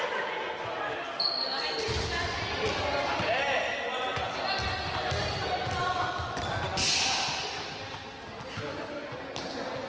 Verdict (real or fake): real